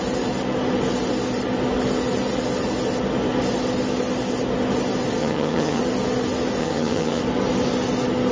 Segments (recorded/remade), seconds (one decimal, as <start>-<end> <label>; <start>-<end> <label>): 0.0-5.2 recorded; 5.2-5.8 remade; 5.8-6.6 recorded; 6.6-7.2 remade; 7.2-8.3 recorded

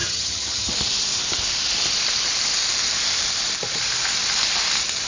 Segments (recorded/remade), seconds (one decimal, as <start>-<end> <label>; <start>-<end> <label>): 0.0-0.7 remade; 0.7-5.1 recorded

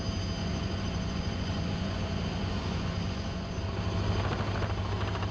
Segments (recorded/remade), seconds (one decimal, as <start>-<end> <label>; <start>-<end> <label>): 0.0-0.4 recorded; 0.4-3.6 remade; 3.6-5.3 recorded